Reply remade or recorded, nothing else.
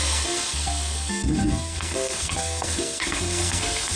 remade